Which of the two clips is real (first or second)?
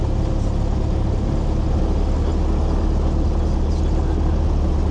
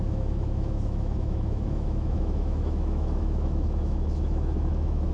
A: first